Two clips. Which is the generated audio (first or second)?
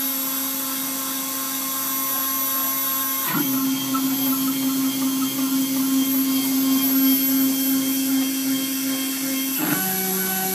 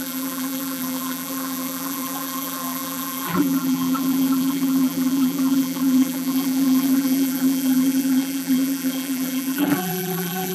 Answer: second